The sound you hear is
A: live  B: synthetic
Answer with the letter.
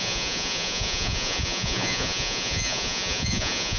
B